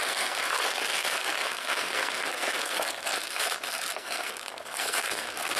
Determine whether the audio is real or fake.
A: fake